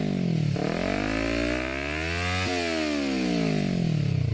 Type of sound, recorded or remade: recorded